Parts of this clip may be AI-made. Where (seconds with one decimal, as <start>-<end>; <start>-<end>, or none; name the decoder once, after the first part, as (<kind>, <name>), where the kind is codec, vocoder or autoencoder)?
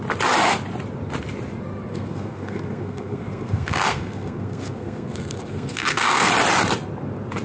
1.9-6.3 (codec, SNAC)